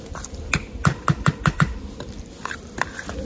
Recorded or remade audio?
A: recorded